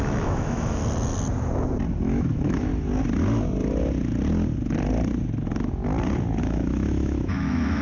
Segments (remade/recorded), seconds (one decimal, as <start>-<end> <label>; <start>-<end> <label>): 0.0-0.8 remade; 0.8-2.0 recorded; 2.0-2.7 remade; 2.7-6.4 recorded; 6.4-7.8 remade